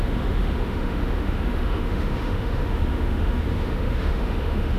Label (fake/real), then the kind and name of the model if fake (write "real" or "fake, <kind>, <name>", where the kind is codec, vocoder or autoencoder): fake, autoencoder, DAC-VAE